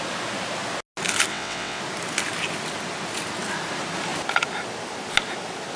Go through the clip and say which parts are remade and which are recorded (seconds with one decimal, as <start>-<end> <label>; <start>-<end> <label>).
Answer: 0.0-1.3 recorded; 1.3-1.8 remade; 1.8-5.8 recorded